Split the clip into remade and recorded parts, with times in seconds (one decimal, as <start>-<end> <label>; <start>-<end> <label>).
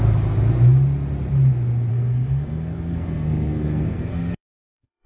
0.0-1.9 recorded; 1.9-5.1 remade